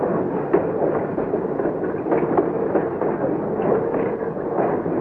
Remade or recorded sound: recorded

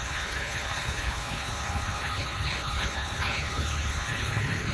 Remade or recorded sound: remade